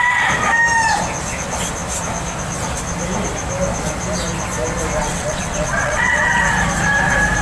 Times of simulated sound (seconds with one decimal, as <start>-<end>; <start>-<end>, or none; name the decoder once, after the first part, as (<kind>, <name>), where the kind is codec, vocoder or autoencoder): 5.0-6.4 (vocoder, WaveNeXt)